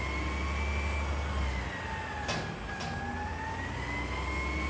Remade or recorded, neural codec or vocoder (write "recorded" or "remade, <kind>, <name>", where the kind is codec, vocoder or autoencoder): recorded